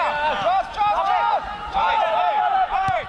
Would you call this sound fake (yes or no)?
no